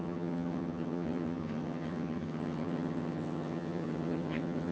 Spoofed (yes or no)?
yes